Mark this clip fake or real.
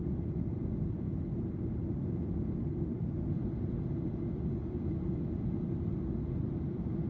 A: real